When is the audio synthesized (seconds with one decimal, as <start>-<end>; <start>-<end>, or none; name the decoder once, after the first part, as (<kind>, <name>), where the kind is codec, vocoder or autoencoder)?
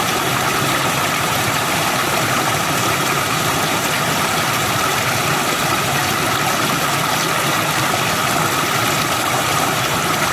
0.0-6.0 (vocoder, BigVGAN v2); 9.3-10.3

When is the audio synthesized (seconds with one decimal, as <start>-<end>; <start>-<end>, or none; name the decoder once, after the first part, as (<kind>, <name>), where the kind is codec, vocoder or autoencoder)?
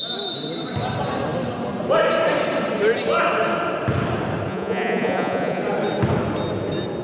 4.5-5.6 (vocoder, Vocos)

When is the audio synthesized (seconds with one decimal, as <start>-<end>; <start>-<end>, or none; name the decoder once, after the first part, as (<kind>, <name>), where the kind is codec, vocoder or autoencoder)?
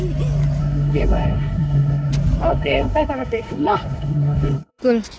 0.6-2.1 (codec, SNAC); 2.5-4.8